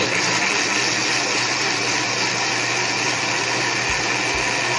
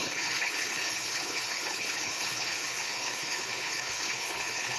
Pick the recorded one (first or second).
first